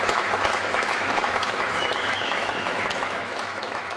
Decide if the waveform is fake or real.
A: fake